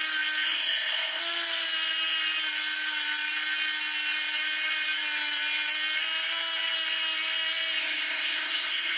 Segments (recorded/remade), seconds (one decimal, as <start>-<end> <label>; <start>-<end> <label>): 0.0-0.5 recorded; 0.5-1.2 remade; 1.2-7.8 recorded; 7.8-9.0 remade